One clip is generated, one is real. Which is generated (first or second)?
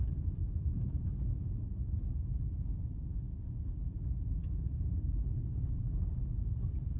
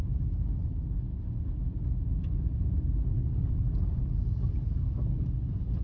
first